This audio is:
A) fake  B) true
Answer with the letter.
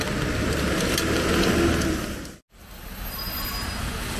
B